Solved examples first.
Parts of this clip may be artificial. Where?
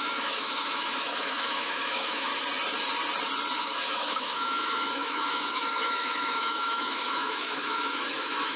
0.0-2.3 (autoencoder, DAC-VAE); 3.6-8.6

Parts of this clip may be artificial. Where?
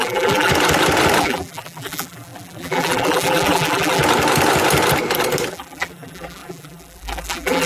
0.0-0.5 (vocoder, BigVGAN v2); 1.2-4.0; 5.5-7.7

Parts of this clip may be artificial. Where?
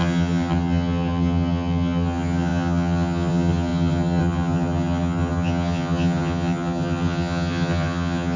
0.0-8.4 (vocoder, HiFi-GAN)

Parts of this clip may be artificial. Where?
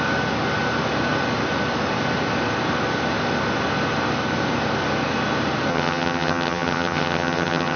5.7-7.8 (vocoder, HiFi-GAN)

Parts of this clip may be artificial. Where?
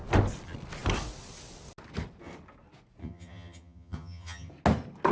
3.0-4.5 (vocoder, HiFi-GAN)